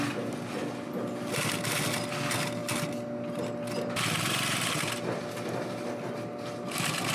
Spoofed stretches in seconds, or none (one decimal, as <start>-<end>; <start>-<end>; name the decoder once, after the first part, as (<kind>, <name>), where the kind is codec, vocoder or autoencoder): none